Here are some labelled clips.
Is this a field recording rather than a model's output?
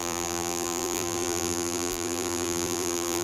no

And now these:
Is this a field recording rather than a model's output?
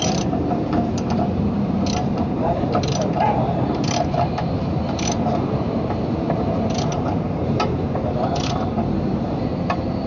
no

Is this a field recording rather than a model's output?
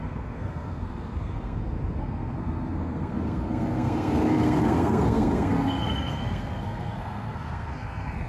no